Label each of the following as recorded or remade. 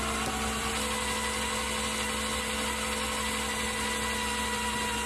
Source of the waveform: recorded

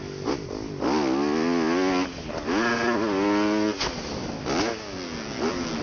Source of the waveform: recorded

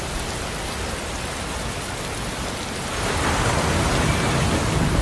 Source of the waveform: recorded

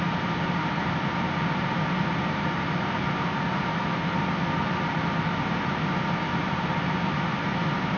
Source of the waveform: remade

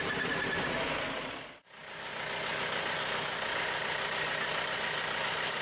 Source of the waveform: recorded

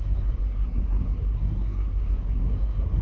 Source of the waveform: remade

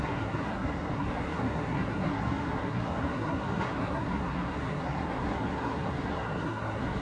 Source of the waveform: remade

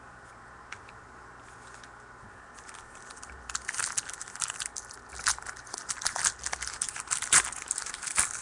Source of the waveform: recorded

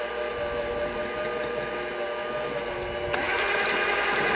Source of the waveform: recorded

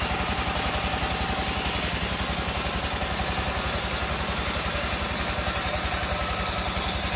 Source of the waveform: recorded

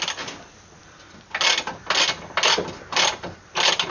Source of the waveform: recorded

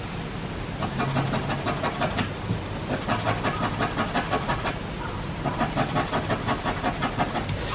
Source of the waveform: recorded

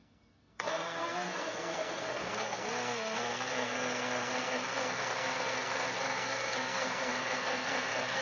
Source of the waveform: remade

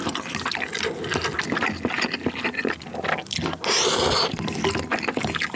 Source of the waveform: recorded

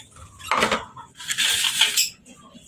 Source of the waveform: recorded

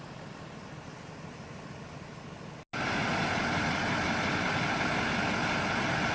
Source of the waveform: recorded